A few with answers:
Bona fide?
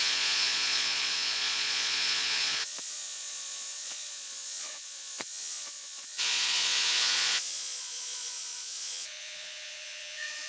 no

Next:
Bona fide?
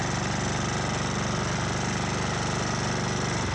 yes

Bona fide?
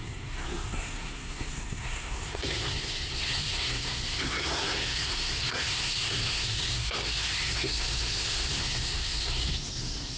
no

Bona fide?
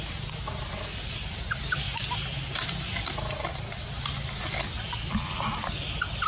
yes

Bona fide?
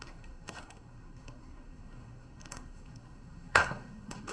no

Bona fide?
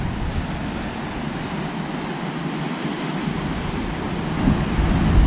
yes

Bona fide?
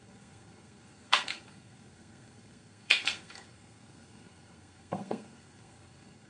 no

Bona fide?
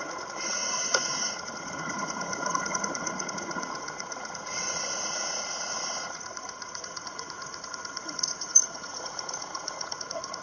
no